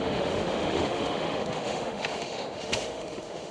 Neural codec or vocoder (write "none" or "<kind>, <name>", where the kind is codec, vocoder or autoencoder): autoencoder, DAC-VAE